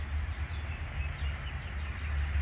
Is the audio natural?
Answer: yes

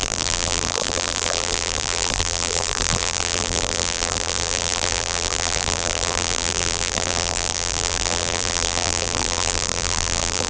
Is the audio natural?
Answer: no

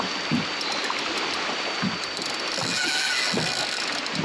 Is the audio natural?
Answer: yes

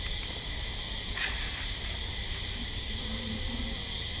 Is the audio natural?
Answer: yes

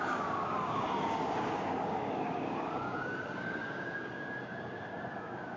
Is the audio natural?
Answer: no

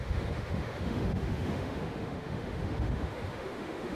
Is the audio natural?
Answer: no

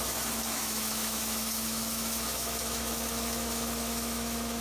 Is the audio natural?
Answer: no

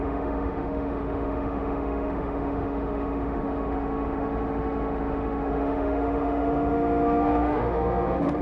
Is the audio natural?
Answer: no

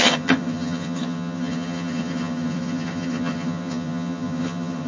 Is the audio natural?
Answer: no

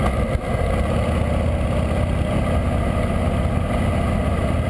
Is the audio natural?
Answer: yes